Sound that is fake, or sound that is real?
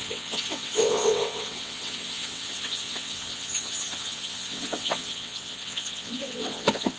fake